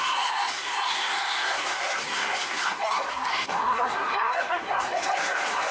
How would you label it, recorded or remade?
remade